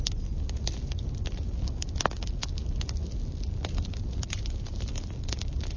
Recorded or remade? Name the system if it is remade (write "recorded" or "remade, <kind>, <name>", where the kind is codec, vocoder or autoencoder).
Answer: recorded